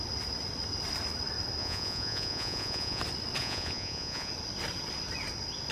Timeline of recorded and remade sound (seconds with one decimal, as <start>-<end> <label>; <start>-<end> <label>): 0.0-1.6 recorded; 1.6-3.0 remade; 3.0-3.4 recorded; 3.4-4.3 remade; 4.3-5.7 recorded